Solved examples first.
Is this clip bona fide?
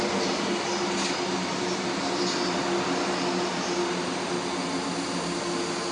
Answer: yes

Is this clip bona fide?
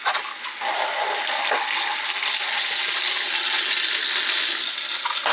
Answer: yes